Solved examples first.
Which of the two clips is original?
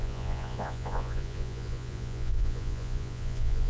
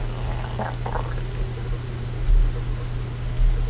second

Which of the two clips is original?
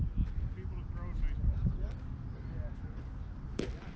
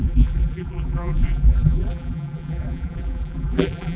first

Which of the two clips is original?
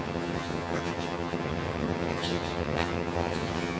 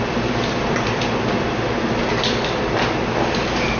second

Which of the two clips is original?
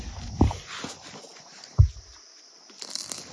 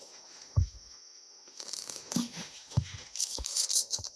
first